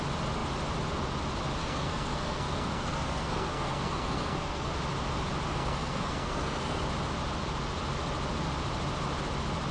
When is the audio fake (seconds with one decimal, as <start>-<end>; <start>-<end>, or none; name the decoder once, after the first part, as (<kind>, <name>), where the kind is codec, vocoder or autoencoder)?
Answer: 1.6-4.7 (codec, SNAC); 5.5-6.8